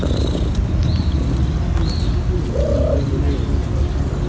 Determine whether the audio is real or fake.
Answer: real